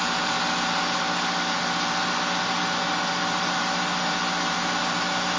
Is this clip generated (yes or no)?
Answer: no